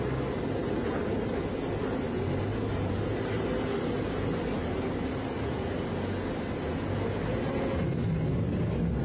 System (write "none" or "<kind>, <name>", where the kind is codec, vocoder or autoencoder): none